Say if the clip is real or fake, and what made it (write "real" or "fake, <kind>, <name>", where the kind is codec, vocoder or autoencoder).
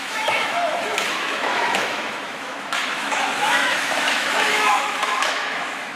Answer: fake, autoencoder, DAC-VAE